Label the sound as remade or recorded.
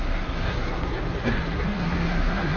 remade